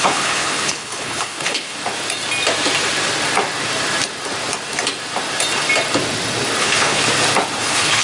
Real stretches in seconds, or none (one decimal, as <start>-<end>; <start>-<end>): 1.8-6.6; 7.0-7.6